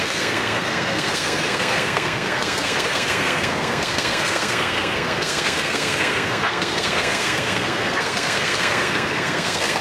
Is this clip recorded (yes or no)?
no